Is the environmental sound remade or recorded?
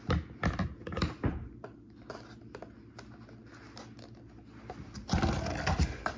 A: recorded